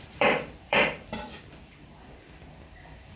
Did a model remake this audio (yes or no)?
yes